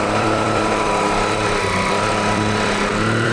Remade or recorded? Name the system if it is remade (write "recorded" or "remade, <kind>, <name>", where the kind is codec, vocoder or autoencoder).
remade, vocoder, BigVGAN v2